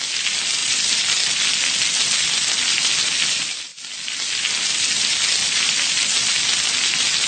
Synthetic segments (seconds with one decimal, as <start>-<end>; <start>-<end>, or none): none